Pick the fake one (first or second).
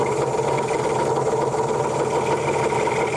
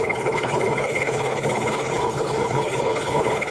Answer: second